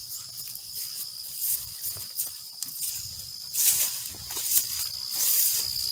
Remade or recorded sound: recorded